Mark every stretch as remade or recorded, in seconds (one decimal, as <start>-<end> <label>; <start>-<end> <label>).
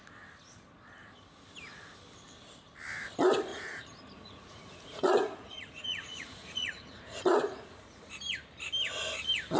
0.0-3.5 recorded; 3.5-8.1 remade; 8.1-9.6 recorded